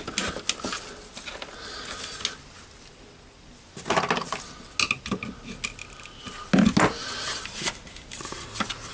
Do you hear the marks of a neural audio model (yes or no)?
no